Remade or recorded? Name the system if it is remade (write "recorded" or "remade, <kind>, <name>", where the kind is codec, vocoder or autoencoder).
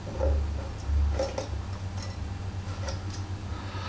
recorded